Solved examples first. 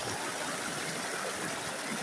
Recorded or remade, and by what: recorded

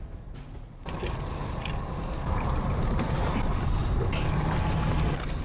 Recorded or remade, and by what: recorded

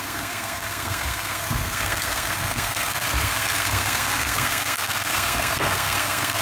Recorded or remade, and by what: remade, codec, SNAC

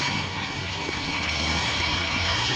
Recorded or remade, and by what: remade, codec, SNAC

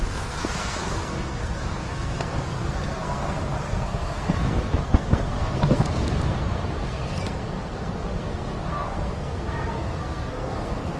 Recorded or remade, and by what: remade, codec, SNAC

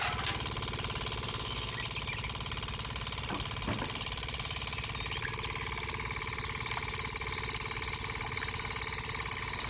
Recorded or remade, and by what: recorded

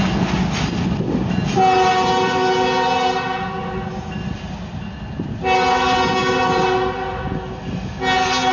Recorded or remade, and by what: recorded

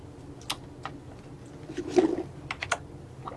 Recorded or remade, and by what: recorded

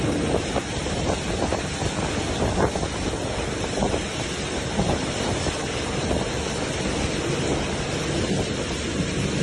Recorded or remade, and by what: recorded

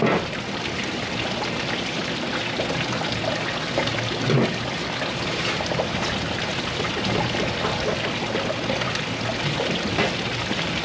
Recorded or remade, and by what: recorded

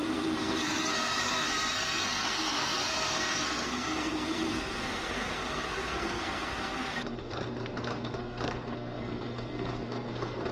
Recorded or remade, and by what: remade, codec, SNAC